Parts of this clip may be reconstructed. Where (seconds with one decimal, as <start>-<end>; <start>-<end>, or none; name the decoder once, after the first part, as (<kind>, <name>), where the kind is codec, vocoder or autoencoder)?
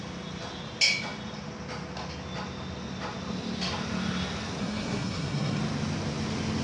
4.6-5.6 (codec, SNAC)